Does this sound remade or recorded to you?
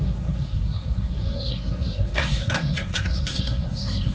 remade